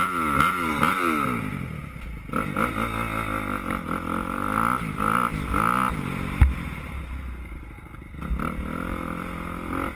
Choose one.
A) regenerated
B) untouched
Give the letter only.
B